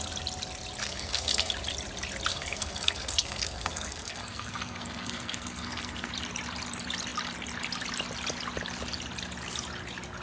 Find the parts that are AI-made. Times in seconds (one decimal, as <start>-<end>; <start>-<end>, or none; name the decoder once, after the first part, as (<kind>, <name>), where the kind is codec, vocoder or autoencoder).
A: 0.8-1.5 (codec, SNAC); 2.3-6.1